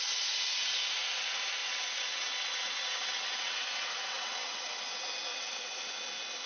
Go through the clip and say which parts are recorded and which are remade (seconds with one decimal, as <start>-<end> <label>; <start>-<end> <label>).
0.0-1.6 recorded; 1.6-4.8 remade; 4.8-5.3 recorded; 5.3-6.0 remade; 6.0-6.5 recorded